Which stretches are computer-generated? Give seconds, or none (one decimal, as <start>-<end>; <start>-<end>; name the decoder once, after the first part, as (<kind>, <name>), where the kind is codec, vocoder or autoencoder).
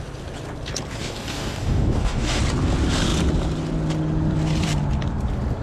1.0-2.4 (codec, DAC)